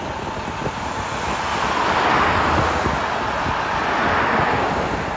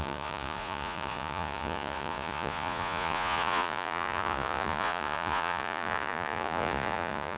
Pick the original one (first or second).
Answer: first